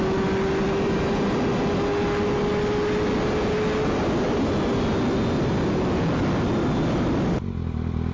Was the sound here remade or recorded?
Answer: recorded